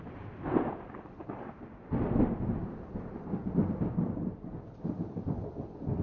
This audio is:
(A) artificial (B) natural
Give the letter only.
A